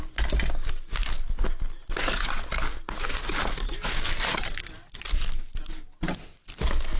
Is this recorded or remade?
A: recorded